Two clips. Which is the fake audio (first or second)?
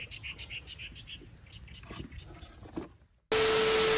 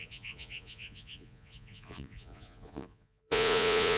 second